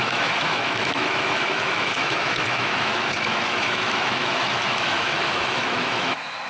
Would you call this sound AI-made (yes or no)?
yes